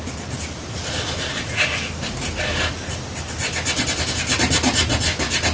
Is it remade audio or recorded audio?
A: recorded